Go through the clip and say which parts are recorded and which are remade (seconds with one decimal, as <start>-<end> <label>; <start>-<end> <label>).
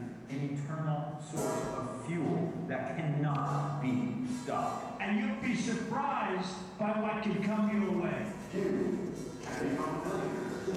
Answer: 0.0-0.4 remade; 0.4-1.1 recorded; 1.1-1.9 remade; 1.9-2.5 recorded; 2.5-3.4 remade; 3.4-8.0 recorded; 8.0-10.8 remade